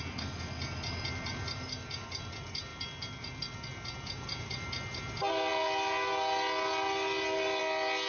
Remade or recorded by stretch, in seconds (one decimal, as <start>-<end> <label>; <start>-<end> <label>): 0.0-8.1 recorded